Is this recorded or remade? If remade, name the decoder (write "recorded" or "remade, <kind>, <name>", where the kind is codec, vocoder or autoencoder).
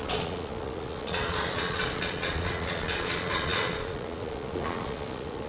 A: remade, vocoder, Vocos